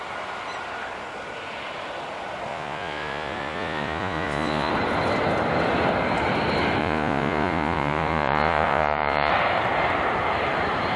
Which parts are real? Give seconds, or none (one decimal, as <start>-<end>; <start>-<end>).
0.0-2.5; 4.7-6.8; 9.3-11.0

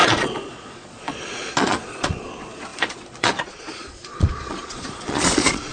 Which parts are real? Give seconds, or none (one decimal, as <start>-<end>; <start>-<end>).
none

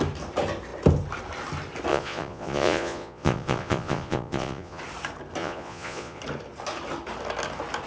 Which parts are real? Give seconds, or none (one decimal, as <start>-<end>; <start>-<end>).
0.0-1.9; 4.8-5.4; 6.2-7.9

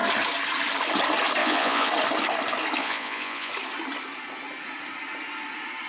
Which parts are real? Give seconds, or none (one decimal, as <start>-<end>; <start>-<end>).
0.0-1.4; 1.9-2.8; 3.5-5.9

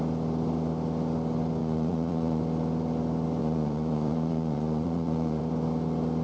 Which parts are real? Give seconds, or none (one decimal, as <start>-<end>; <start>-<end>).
0.0-1.6; 2.4-3.4; 5.4-6.2

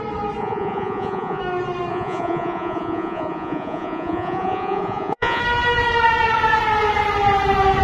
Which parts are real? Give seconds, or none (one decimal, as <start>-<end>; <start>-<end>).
0.0-0.4; 1.4-1.9; 5.4-7.8

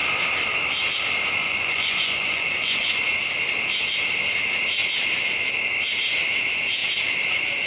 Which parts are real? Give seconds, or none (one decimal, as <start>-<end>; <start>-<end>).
0.0-1.4; 3.0-7.7